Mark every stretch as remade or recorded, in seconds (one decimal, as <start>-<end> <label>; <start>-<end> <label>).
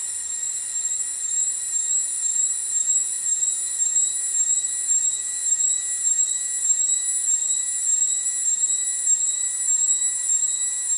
0.0-11.0 recorded